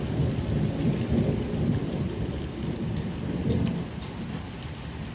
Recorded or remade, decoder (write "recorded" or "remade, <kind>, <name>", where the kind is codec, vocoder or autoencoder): recorded